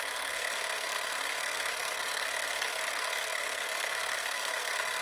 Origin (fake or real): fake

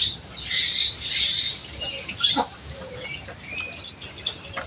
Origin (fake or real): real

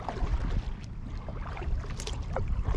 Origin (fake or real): real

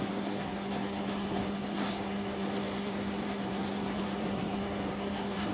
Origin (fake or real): fake